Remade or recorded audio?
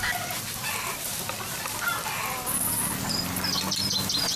recorded